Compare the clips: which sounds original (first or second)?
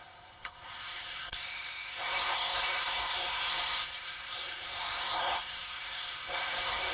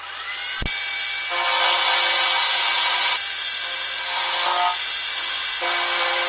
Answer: second